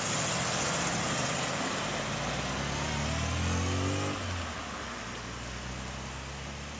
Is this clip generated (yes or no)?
no